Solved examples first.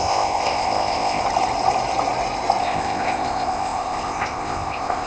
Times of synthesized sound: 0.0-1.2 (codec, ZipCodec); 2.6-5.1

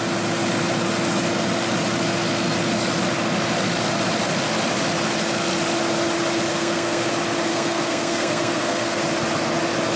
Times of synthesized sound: 6.5-7.1 (codec, SNAC); 7.5-9.0

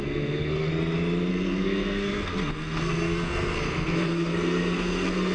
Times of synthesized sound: 0.0-0.7 (codec, SNAC); 1.3-5.3

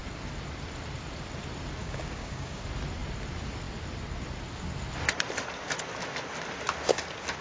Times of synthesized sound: 1.8-2.6 (codec, DAC)

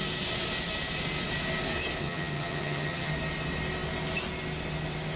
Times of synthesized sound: 2.0-3.1 (vocoder, HiFi-GAN)